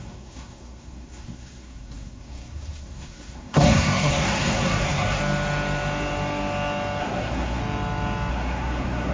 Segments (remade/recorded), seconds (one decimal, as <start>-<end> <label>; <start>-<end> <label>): 0.0-5.2 remade; 5.2-7.0 recorded; 7.0-7.6 remade; 7.6-8.3 recorded; 8.3-9.1 remade

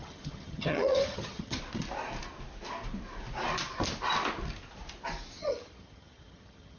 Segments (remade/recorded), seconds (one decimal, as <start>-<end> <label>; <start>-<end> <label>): 0.0-1.6 remade; 1.6-5.4 recorded; 5.4-6.8 remade

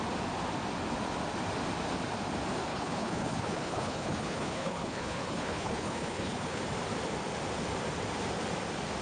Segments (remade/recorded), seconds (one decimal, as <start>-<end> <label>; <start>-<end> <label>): 0.0-2.7 recorded; 2.7-6.6 remade; 6.6-9.0 recorded

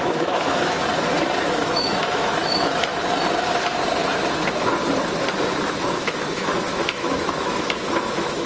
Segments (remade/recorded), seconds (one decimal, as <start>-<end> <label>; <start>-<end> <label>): 0.0-0.8 remade; 0.8-1.4 recorded; 1.4-2.9 remade; 2.9-6.0 recorded; 6.0-8.5 remade